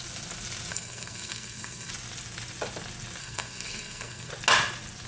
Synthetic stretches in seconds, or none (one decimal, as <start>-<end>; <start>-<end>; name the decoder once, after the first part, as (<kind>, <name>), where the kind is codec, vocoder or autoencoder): 0.7-1.9 (codec, SNAC); 3.2-4.3